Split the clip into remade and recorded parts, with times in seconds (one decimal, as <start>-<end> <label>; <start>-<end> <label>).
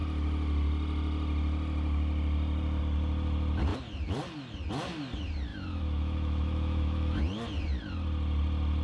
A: 0.0-5.5 recorded; 5.5-7.2 remade; 7.2-8.8 recorded